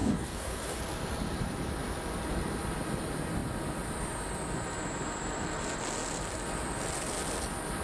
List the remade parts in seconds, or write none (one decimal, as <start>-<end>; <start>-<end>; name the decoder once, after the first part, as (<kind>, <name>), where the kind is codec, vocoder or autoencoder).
0.0-0.8 (codec, DAC)